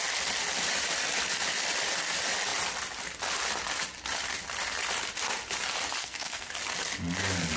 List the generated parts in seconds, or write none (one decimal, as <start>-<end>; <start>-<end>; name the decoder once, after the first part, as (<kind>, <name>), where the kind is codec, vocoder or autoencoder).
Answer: 6.0-6.5 (codec, SNAC)